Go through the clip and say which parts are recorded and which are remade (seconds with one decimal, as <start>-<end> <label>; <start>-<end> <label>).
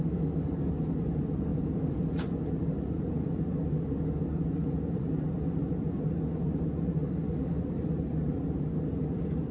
0.0-0.7 remade; 0.7-7.0 recorded; 7.0-7.6 remade; 7.6-9.5 recorded